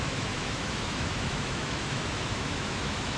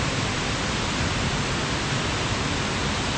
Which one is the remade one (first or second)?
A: first